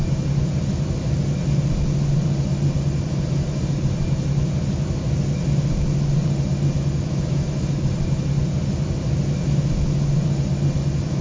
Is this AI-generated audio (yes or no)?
no